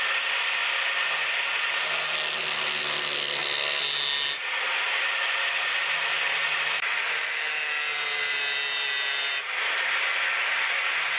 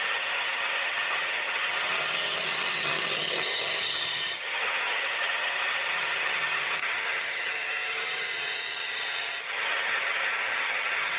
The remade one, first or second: second